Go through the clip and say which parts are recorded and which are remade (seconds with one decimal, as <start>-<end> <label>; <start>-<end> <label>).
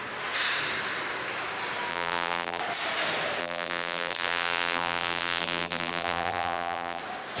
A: 0.0-1.9 recorded; 1.9-2.6 remade; 2.6-3.4 recorded; 3.4-7.0 remade; 7.0-7.4 recorded